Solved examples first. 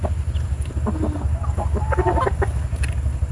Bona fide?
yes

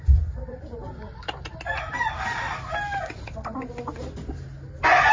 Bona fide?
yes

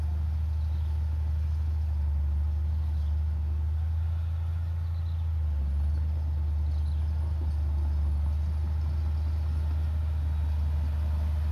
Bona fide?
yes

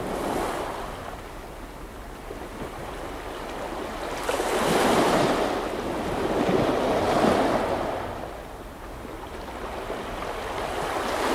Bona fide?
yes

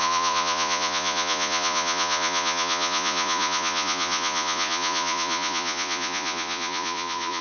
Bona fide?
no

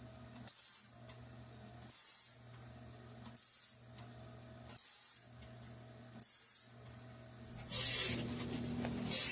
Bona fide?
yes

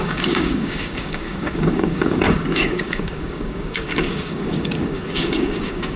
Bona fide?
no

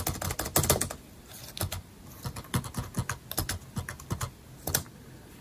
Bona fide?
yes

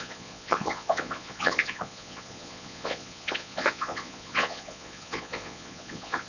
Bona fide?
no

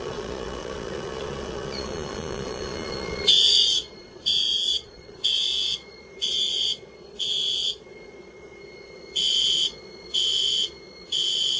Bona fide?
no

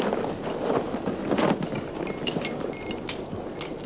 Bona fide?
yes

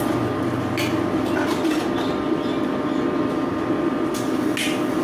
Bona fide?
yes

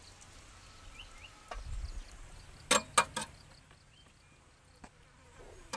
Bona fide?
yes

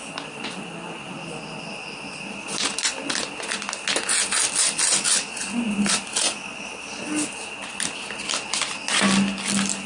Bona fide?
yes